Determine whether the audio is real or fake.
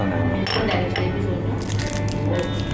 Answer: real